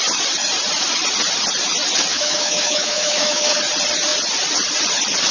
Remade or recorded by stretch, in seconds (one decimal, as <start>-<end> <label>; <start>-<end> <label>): 0.0-2.1 recorded; 2.1-3.6 remade; 3.6-5.3 recorded